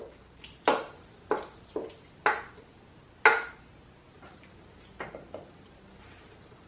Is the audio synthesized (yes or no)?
no